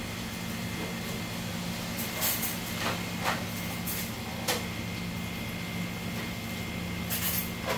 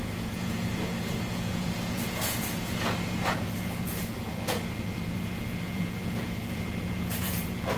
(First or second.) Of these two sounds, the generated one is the second